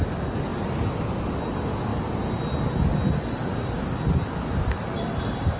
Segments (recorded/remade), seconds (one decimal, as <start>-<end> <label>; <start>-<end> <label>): 0.0-5.6 recorded